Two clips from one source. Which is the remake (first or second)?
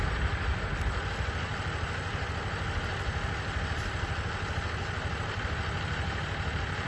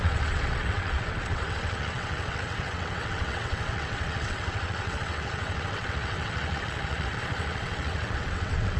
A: second